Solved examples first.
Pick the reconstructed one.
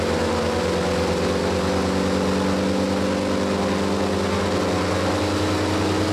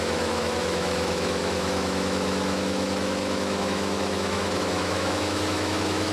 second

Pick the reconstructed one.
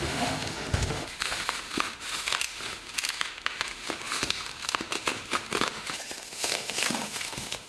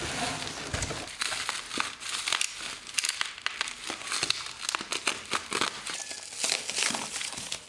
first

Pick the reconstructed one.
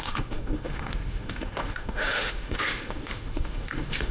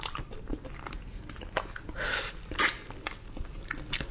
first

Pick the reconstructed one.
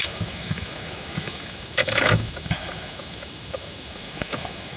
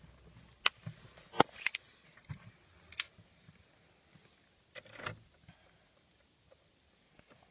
first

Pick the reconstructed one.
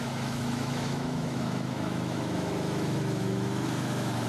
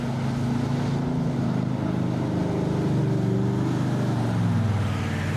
first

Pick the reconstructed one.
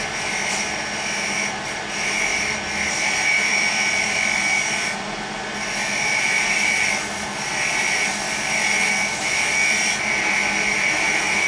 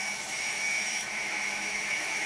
second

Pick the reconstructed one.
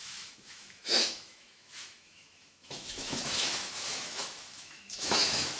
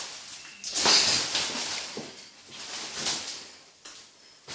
first